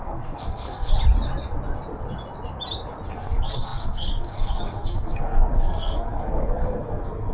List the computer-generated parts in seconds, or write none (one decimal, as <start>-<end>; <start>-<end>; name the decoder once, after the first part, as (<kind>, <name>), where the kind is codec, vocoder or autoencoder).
0.0-0.9 (codec, SNAC); 3.1-7.3